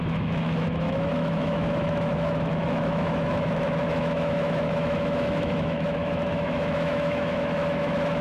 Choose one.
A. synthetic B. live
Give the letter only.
A